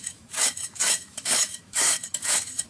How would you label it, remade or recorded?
remade